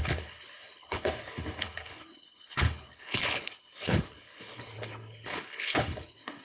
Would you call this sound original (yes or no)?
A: no